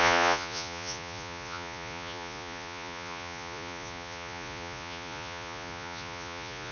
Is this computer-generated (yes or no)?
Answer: yes